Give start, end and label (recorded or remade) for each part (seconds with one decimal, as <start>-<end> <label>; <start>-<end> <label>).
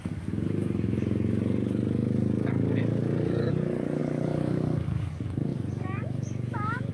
0.0-6.9 remade